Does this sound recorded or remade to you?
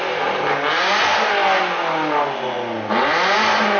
recorded